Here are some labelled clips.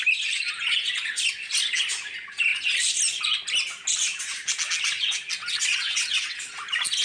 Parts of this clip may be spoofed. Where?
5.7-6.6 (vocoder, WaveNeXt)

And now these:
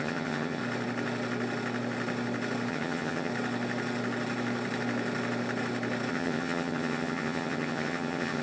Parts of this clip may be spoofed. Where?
0.0-0.6 (vocoder, HiFi-GAN); 2.7-3.3; 6.1-8.4

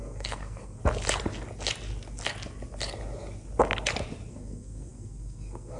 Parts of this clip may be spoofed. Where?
0.0-0.8 (codec, SNAC); 4.3-5.8

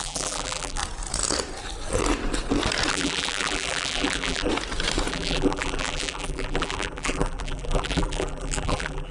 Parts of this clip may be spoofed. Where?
0.0-0.8 (vocoder, BigVGAN v2); 2.9-4.5; 5.1-9.1

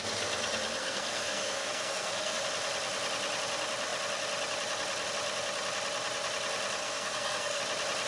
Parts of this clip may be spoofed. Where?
0.8-2.4 (codec, SNAC); 6.8-7.6

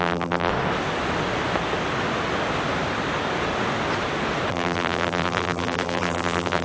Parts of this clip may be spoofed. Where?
0.0-0.5 (vocoder, BigVGAN v2); 4.5-6.6

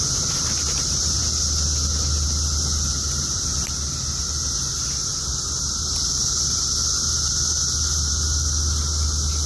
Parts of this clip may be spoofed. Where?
none

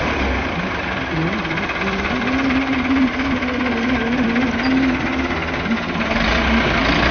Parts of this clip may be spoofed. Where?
0.0-5.1 (vocoder, BigVGAN v2)